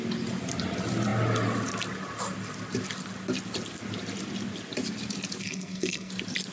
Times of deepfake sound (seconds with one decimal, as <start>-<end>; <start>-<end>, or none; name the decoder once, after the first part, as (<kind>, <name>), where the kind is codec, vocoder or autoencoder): 5.4-6.1 (codec, SNAC)